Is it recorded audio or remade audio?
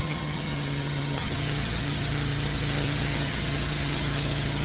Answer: remade